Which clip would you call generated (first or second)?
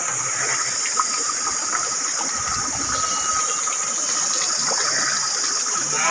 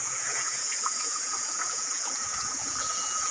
second